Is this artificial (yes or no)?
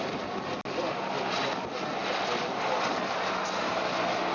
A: no